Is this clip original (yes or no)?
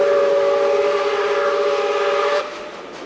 yes